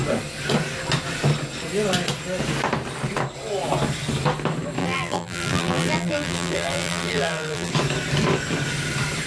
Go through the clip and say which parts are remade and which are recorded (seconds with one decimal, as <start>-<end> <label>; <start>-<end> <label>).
0.0-4.8 recorded; 4.8-7.7 remade; 7.7-9.3 recorded